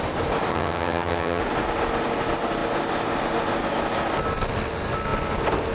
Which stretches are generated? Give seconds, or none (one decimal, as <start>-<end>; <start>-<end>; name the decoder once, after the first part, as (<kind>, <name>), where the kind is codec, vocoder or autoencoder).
0.5-1.4 (vocoder, HiFi-GAN)